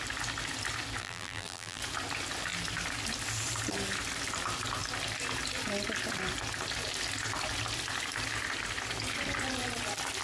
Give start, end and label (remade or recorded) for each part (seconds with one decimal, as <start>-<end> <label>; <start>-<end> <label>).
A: 0.0-1.0 recorded; 1.0-1.8 remade; 1.8-10.2 recorded